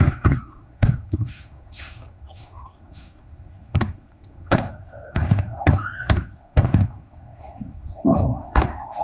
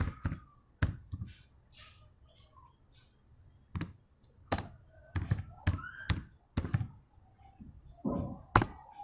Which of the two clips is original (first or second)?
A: second